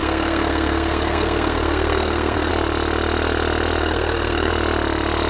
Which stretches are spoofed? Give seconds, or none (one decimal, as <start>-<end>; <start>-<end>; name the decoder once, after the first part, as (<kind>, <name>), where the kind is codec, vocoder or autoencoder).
0.0-2.5 (codec, SNAC); 3.8-4.5